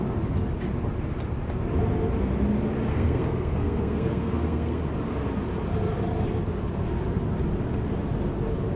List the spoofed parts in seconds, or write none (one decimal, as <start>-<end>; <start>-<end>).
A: 2.9-4.8